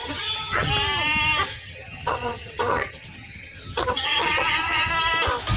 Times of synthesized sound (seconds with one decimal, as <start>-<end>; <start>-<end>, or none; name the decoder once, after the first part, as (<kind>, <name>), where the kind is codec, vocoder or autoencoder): 0.0-0.7 (vocoder, HiFi-GAN); 1.5-4.9